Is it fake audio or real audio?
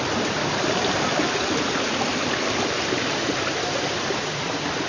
real